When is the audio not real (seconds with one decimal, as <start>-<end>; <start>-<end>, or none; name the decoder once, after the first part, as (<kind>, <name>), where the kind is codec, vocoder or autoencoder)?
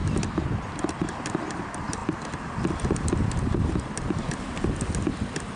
none